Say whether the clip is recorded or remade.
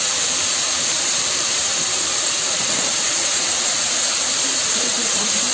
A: remade